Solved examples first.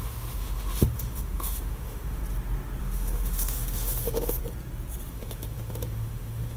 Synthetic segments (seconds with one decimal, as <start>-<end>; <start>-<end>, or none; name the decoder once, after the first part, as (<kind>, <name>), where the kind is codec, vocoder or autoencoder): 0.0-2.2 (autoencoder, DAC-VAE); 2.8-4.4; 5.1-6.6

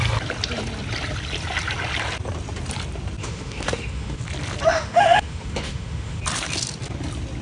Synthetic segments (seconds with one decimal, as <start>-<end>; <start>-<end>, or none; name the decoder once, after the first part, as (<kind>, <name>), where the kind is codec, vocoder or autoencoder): 3.2-4.2 (autoencoder, DAC-VAE); 4.7-6.2

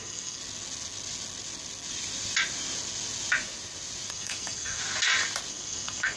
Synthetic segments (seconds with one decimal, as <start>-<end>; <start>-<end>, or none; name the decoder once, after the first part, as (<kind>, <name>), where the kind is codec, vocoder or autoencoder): 0.0-0.4 (codec, SNAC); 4.1-4.8; 5.5-6.2

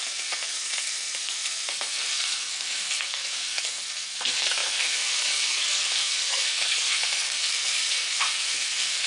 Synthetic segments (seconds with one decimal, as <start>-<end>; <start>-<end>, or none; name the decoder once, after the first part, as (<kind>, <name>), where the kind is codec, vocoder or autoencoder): 0.0-9.1 (codec, SNAC)

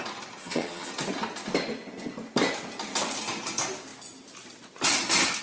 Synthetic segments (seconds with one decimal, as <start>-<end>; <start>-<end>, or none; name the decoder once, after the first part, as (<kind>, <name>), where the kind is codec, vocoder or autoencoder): 0.4-0.9 (vocoder, HiFi-GAN)

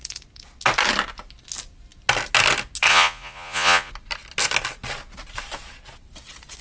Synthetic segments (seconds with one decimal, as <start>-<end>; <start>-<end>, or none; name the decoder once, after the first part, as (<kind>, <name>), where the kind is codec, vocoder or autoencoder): 2.9-3.9 (vocoder, Vocos)

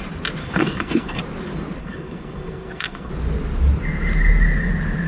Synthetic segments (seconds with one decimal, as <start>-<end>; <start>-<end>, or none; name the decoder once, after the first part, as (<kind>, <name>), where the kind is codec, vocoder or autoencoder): 0.4-1.2 (codec, SNAC); 1.8-3.1

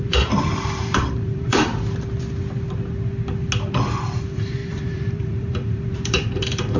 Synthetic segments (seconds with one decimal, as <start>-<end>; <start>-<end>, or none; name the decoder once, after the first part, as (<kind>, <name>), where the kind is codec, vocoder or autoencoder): 0.0-1.7 (vocoder, BigVGAN v2); 3.8-6.8